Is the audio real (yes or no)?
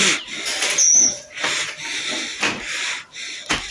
yes